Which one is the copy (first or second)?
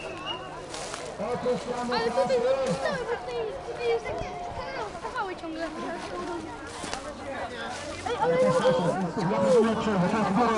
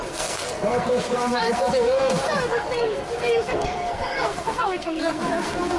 second